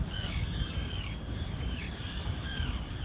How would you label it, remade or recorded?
remade